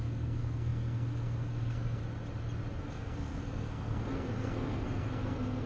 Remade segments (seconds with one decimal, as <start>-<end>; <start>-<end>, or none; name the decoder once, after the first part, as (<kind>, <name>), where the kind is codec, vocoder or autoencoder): 0.0-2.0 (codec, SNAC); 2.8-5.7